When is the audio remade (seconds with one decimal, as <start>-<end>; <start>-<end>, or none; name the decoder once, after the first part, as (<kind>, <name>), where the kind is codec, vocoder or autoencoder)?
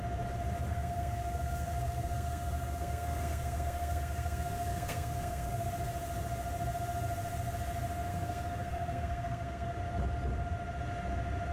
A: 0.7-5.7 (codec, SNAC); 8.1-9.8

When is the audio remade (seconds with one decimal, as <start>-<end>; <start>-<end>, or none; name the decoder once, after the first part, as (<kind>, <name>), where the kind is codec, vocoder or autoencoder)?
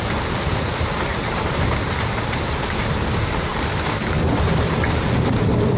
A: 1.1-2.8 (vocoder, BigVGAN v2); 3.5-4.8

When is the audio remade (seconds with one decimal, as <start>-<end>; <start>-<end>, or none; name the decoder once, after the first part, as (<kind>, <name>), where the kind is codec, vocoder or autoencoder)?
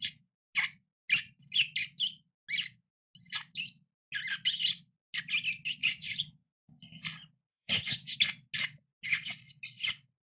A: 5.8-6.8 (vocoder, Vocos); 7.5-8.2